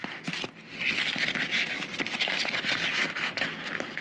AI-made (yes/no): no